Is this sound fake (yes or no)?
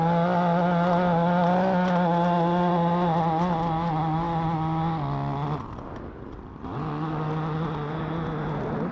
no